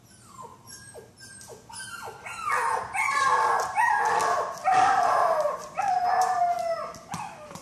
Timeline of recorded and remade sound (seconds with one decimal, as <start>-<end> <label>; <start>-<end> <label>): 0.0-4.6 recorded; 4.6-6.4 remade; 6.4-7.6 recorded